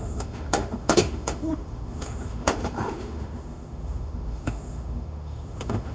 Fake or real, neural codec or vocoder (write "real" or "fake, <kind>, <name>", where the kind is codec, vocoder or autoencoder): fake, autoencoder, DAC-VAE